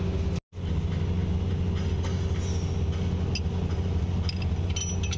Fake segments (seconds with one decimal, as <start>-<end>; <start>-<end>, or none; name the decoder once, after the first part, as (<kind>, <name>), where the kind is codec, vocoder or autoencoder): none